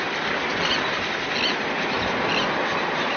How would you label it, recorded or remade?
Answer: recorded